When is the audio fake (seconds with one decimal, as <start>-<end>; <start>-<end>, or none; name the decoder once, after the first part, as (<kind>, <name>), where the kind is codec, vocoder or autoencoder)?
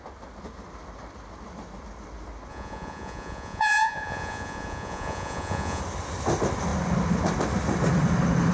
2.5-5.8 (vocoder, Vocos)